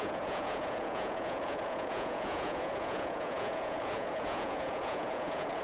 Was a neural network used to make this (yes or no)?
yes